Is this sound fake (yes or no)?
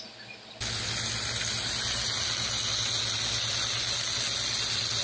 no